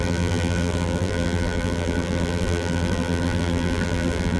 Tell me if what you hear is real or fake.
fake